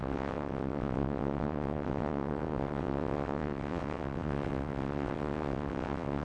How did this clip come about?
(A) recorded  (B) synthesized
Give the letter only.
B